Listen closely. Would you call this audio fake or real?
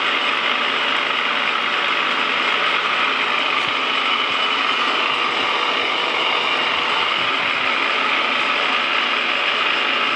real